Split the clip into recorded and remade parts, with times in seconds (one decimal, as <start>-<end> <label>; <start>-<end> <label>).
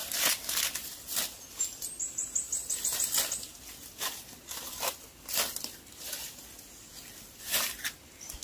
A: 0.0-6.9 recorded; 6.9-7.6 remade; 7.6-8.4 recorded